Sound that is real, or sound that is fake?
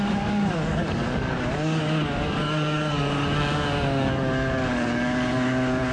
fake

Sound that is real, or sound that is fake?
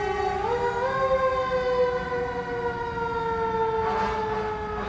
real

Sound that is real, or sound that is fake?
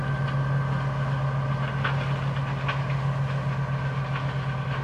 real